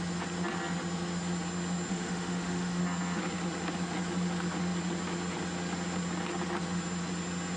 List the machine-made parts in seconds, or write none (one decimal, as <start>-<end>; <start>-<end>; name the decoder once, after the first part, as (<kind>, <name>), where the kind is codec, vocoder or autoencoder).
1.9-2.8 (autoencoder, DAC-VAE)